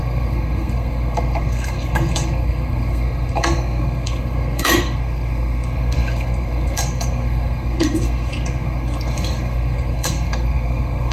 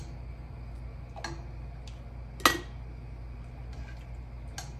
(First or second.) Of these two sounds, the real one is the second